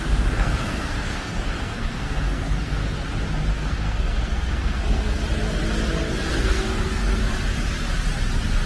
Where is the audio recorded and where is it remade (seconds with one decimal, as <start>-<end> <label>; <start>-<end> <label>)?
0.0-2.8 remade; 2.8-3.5 recorded; 3.5-5.2 remade; 5.2-6.3 recorded; 6.3-7.2 remade; 7.2-8.7 recorded